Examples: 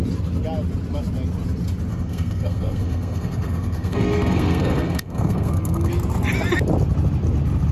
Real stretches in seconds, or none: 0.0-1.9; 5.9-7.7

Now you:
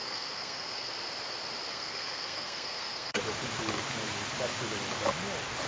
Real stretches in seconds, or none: 0.9-1.7; 3.2-5.7

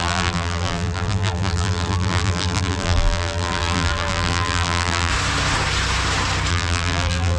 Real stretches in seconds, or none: 5.1-6.5